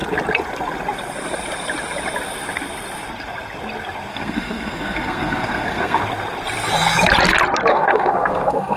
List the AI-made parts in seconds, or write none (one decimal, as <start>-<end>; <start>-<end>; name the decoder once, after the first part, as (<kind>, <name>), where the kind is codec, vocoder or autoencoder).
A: 4.1-6.0 (codec, SNAC); 7.7-8.8